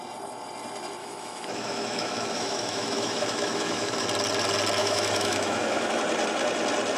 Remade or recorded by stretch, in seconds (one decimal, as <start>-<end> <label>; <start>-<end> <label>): 0.0-1.0 recorded; 1.0-4.0 remade; 4.0-4.8 recorded; 4.8-6.0 remade; 6.0-7.0 recorded